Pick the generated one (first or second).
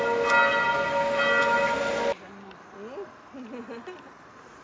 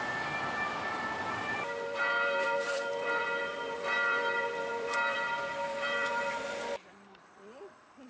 second